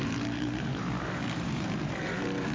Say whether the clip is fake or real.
fake